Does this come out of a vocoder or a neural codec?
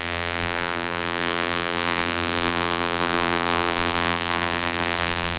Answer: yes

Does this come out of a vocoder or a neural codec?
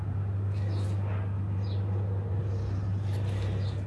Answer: no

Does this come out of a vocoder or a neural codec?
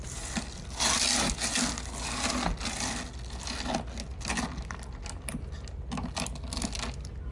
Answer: no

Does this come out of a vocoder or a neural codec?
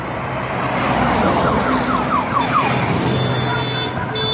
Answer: no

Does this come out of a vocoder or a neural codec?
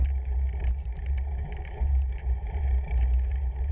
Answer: yes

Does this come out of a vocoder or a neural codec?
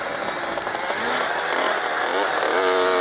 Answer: no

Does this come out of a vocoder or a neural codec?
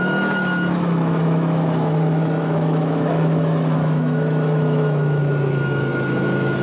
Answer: yes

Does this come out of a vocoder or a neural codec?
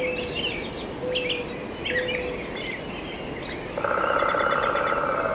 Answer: no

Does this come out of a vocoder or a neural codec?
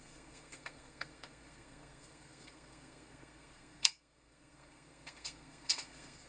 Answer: yes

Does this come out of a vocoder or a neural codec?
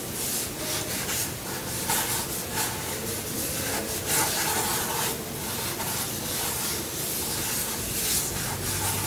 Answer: no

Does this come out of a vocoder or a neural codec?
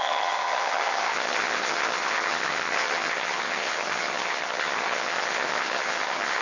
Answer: yes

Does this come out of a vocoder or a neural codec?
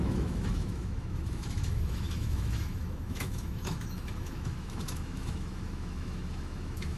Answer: yes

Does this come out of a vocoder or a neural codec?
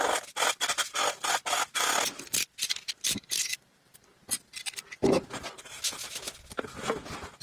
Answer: no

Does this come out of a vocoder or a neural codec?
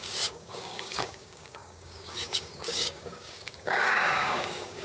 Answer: yes